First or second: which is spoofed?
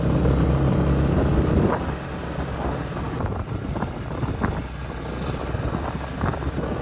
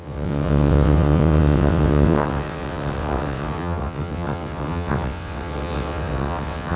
second